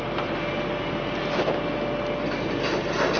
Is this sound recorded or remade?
recorded